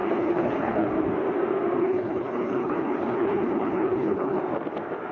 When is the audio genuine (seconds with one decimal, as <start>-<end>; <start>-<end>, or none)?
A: 0.9-1.8; 4.4-5.1